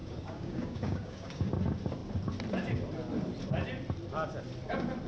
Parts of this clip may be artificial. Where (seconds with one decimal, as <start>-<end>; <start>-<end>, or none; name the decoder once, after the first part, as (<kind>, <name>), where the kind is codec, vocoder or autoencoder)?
0.0-1.5 (codec, DAC)